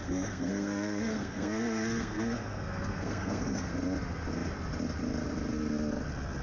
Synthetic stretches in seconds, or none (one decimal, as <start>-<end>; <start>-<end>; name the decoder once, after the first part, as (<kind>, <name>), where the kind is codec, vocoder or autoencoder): 0.0-3.7 (codec, SNAC)